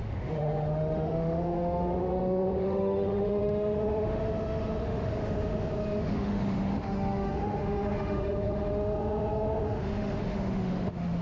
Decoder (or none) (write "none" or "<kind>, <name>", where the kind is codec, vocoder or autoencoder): autoencoder, DAC-VAE